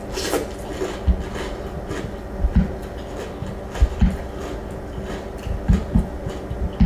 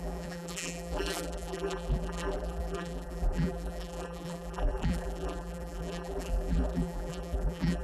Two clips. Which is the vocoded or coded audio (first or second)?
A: second